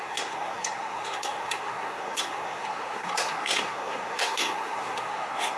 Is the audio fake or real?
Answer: fake